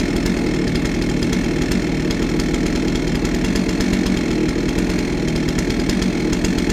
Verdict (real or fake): real